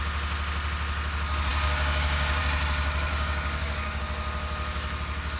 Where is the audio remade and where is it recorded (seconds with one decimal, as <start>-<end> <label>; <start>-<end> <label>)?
0.0-1.5 recorded; 1.5-2.4 remade; 2.4-3.1 recorded; 3.1-4.0 remade; 4.0-5.4 recorded

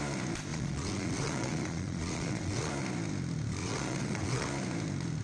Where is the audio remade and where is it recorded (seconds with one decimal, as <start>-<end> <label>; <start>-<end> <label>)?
0.0-0.5 recorded; 0.5-2.7 remade; 2.7-3.6 recorded; 3.6-4.5 remade; 4.5-5.2 recorded

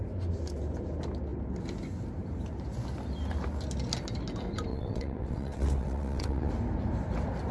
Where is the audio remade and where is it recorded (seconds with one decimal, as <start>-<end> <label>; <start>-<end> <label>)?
0.0-4.7 recorded; 4.7-6.5 remade; 6.5-7.5 recorded

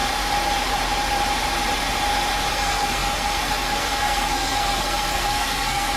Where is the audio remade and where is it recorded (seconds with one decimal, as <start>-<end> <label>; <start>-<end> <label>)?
0.0-2.5 recorded; 2.5-6.0 remade